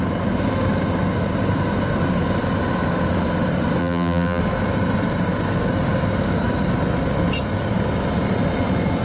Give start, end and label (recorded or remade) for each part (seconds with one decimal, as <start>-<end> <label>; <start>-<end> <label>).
0.0-3.8 recorded; 3.8-4.4 remade; 4.4-9.0 recorded